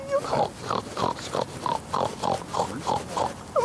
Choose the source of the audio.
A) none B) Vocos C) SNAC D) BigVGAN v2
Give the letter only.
A